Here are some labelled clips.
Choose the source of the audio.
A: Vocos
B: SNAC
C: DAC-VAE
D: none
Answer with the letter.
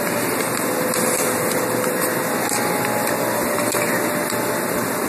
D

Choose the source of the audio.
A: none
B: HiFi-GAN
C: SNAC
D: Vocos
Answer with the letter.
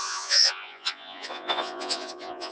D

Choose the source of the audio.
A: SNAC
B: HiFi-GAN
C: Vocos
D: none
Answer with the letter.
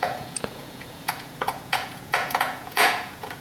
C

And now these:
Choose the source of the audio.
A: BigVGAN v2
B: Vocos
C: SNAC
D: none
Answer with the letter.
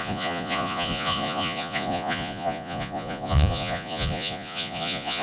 B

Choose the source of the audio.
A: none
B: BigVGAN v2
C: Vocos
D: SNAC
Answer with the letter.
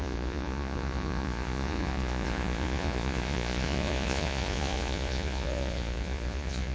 C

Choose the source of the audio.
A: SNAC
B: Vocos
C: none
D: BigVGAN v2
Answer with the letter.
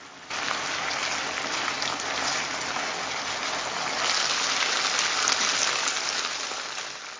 C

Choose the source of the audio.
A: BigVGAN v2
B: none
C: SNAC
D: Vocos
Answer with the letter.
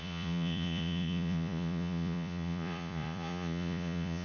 D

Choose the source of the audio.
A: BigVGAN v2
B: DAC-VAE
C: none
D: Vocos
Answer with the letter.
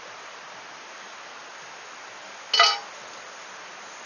C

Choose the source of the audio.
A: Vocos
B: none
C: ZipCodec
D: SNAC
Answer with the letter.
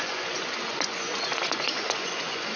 A